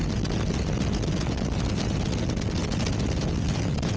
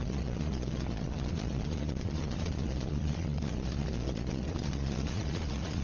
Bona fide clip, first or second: first